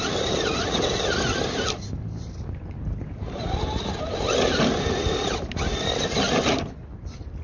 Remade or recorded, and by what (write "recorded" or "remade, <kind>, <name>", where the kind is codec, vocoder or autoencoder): recorded